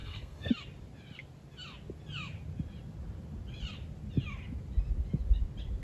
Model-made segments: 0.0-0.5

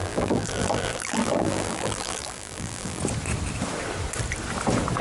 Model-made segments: 0.0-3.0

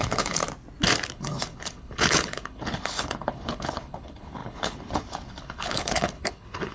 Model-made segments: 0.0-0.4; 1.1-6.7

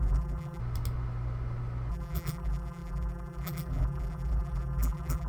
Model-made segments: 0.0-0.6; 1.9-5.3

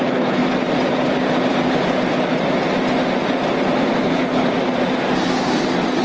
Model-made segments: 0.0-0.4; 4.0-4.4

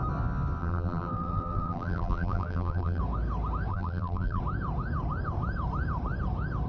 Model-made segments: 0.6-3.0; 3.7-4.4

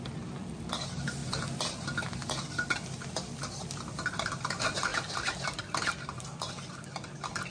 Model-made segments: 0.0-4.9; 5.6-7.5

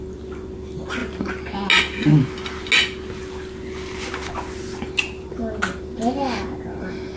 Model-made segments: none